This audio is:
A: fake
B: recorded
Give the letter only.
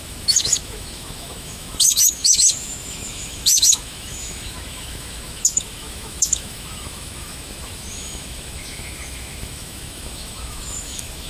A